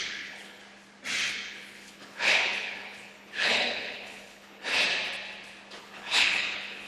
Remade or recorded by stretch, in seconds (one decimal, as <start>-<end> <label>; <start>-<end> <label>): 0.0-0.6 remade; 0.6-1.3 recorded; 1.3-4.7 remade; 4.7-5.8 recorded; 5.8-6.9 remade